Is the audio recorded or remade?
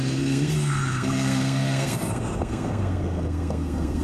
remade